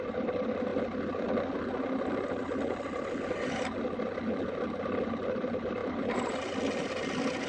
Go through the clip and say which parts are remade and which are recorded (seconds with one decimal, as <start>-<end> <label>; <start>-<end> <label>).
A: 0.0-7.5 recorded